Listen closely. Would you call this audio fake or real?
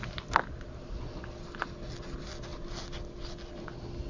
real